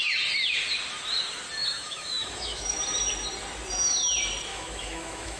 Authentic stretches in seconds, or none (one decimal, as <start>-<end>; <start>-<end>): 0.0-1.6; 2.8-4.5